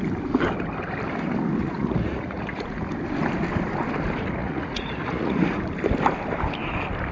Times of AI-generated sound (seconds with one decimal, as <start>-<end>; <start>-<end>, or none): 1.6-2.8; 4.4-5.6